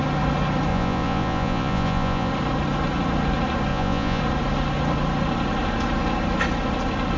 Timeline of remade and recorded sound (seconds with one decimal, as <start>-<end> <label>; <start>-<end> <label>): 0.0-0.7 recorded; 0.7-2.3 remade; 2.3-3.7 recorded; 3.7-4.2 remade; 4.2-7.2 recorded